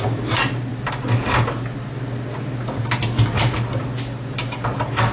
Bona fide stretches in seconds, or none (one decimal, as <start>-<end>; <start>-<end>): 0.0-5.1